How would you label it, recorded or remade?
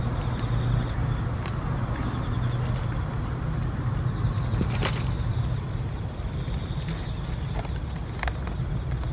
recorded